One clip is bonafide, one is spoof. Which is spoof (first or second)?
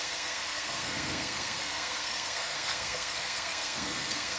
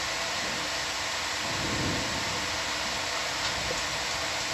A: first